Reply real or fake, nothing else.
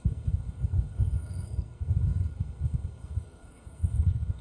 fake